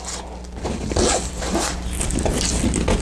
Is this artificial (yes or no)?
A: no